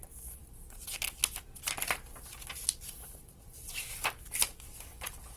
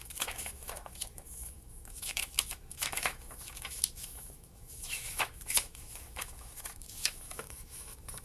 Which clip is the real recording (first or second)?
first